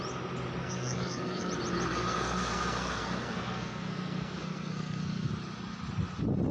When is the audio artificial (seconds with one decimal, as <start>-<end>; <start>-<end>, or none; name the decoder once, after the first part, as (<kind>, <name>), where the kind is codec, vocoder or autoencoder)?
0.6-1.5 (codec, SNAC); 1.9-5.3